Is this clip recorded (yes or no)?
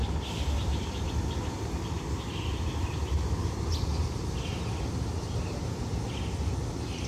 yes